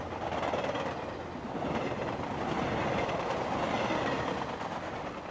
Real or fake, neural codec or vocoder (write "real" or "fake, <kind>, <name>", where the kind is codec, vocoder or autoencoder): real